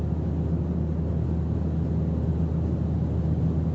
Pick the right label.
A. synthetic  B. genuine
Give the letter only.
B